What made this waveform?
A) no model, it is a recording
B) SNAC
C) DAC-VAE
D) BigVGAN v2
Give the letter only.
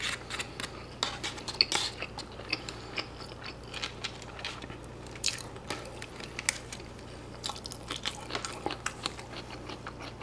A